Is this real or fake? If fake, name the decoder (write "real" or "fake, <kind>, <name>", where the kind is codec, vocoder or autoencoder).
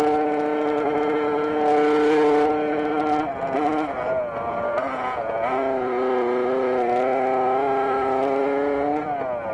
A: real